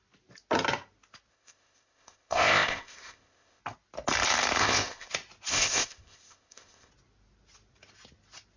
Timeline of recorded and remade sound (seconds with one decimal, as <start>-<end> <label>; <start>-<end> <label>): 0.0-1.3 recorded; 1.3-3.6 remade; 3.6-4.6 recorded; 4.6-5.1 remade; 5.1-5.5 recorded; 5.5-6.9 remade; 6.9-8.6 recorded